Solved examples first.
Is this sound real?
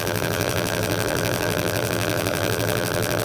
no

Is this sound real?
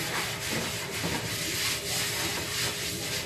no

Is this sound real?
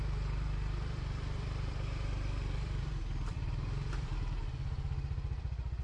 no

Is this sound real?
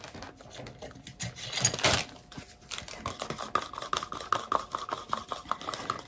yes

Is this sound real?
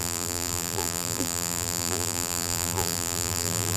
no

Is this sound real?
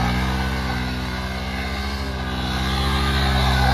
yes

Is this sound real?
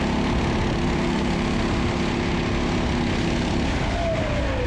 yes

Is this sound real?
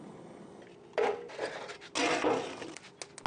yes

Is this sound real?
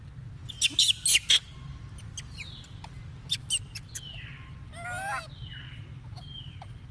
yes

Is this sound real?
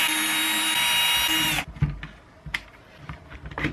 yes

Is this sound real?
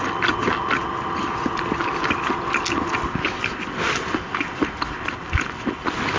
yes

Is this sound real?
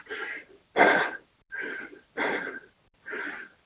no